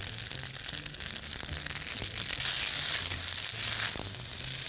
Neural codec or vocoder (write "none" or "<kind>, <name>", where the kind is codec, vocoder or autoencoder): none